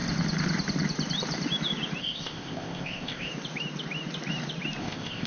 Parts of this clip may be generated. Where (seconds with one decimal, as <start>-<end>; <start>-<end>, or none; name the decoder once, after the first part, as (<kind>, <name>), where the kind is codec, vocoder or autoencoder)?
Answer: 2.0-3.3 (codec, ZipCodec); 4.8-5.3